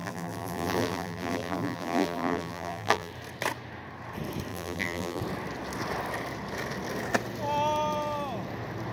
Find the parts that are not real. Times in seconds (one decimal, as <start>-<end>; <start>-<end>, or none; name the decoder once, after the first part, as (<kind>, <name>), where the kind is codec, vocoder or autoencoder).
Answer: 0.0-3.1 (vocoder, BigVGAN v2); 4.5-5.2

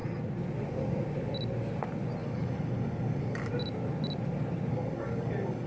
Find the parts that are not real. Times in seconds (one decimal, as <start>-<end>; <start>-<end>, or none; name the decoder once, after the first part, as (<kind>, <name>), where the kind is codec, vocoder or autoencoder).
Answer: 2.2-3.5 (codec, DAC); 4.7-5.7

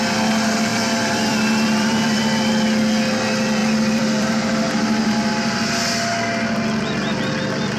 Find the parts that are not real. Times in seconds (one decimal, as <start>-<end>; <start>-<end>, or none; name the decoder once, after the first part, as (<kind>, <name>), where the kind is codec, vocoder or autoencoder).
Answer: 0.7-2.5 (vocoder, BigVGAN v2); 3.6-5.3

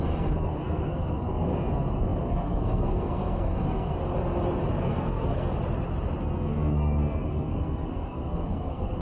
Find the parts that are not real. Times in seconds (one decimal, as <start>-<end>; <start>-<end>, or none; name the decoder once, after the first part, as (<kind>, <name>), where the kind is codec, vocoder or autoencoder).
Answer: 0.0-4.0 (codec, SNAC); 4.7-5.5; 6.2-9.0

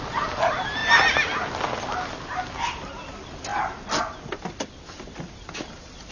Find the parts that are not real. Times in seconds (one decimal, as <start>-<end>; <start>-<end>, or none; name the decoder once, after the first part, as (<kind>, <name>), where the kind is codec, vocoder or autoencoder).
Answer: none

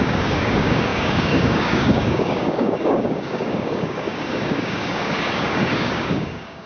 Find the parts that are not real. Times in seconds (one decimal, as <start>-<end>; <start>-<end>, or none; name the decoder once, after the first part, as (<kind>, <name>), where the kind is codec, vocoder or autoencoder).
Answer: 0.0-6.7 (codec, DAC)